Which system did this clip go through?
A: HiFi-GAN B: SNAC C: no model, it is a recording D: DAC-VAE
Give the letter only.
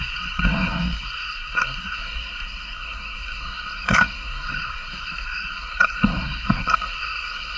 B